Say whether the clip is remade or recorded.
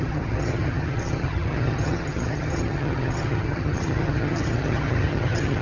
remade